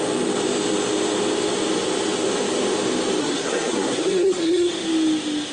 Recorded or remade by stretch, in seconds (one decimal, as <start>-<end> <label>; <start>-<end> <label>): 0.0-3.2 recorded; 3.2-4.7 remade; 4.7-5.5 recorded